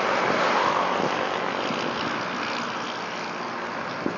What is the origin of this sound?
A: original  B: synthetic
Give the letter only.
A